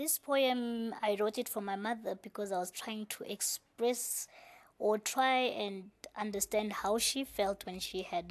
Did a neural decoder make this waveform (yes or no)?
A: no